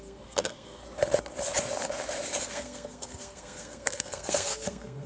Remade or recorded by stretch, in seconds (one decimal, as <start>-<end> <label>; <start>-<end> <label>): 0.0-0.8 remade; 0.8-2.4 recorded; 2.4-5.1 remade